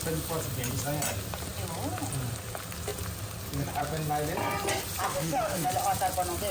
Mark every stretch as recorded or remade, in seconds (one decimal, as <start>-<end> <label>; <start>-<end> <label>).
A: 0.0-5.1 recorded; 5.1-5.7 remade; 5.7-6.5 recorded